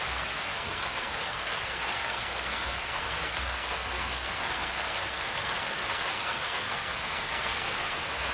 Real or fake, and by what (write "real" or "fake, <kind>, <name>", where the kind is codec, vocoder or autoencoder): fake, codec, SNAC